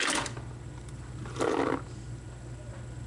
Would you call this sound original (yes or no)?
yes